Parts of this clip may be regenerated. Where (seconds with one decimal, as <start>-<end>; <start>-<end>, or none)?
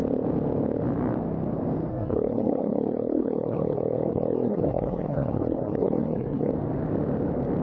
1.9-6.5